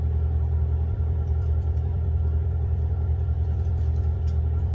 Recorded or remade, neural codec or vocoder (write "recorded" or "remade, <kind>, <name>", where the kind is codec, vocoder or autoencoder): remade, vocoder, BigVGAN v2